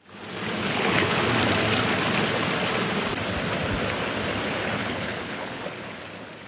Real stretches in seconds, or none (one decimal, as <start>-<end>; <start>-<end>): 0.0-0.6; 1.2-4.8; 5.6-6.5